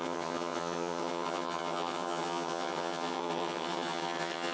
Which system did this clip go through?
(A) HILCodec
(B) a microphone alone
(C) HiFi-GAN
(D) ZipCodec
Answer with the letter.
C